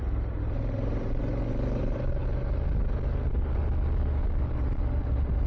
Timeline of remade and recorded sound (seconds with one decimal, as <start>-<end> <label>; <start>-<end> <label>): 0.0-1.3 remade; 1.3-1.8 recorded; 1.8-2.2 remade; 2.2-5.0 recorded; 5.0-5.5 remade